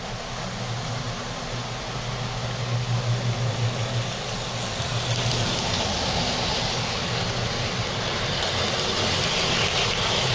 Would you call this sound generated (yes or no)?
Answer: no